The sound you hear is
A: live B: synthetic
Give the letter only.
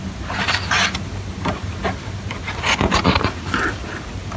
A